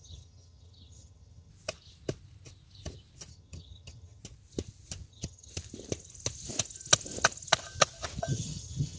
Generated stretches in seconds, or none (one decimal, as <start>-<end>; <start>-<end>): 0.0-1.5; 3.3-4.2; 5.1-5.5; 8.2-9.0